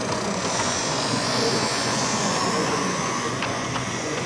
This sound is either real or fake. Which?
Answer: fake